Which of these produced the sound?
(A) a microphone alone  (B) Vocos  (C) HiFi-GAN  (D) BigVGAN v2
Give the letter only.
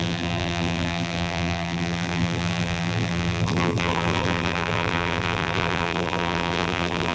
D